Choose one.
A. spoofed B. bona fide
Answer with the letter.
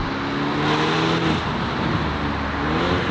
B